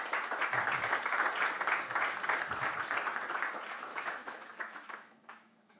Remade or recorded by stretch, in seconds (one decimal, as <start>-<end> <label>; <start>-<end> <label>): 0.0-3.9 recorded; 3.9-5.8 remade